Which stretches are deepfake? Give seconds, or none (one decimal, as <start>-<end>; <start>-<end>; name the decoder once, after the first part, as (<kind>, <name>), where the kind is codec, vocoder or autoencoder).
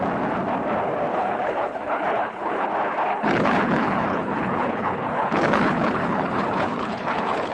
1.1-2.7 (codec, HILCodec); 3.1-7.5